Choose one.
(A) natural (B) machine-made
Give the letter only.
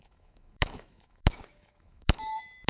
B